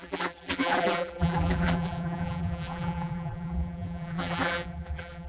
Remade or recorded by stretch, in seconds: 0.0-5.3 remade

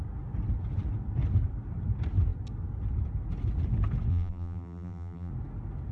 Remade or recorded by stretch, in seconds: 0.0-4.1 recorded; 4.1-5.3 remade; 5.3-5.9 recorded

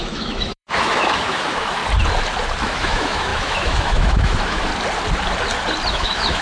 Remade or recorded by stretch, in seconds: 0.0-1.8 remade; 1.8-2.6 recorded; 2.6-4.7 remade; 4.7-5.9 recorded; 5.9-6.4 remade

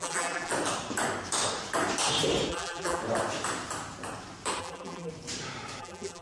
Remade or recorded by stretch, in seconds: 0.0-0.5 remade; 0.5-2.5 recorded; 2.5-3.0 remade; 3.0-4.6 recorded; 4.6-5.1 remade; 5.1-5.8 recorded; 5.8-6.2 remade

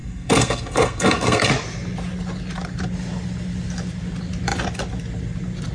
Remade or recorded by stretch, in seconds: 0.0-1.5 remade; 1.5-5.7 recorded

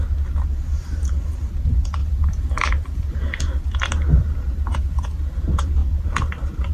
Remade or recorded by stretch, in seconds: 0.0-2.0 recorded; 2.0-3.2 remade; 3.2-6.7 recorded

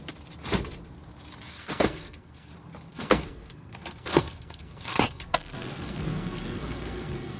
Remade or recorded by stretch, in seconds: 0.0-1.5 recorded; 1.5-2.5 remade; 2.5-2.9 recorded; 2.9-7.4 remade